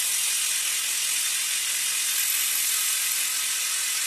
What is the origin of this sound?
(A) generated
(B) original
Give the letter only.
B